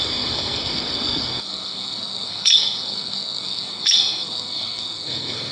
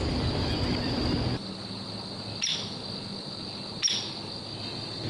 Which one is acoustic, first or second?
second